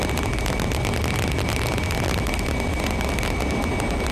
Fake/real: real